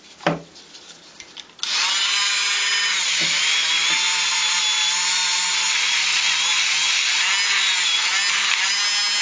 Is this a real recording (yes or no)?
yes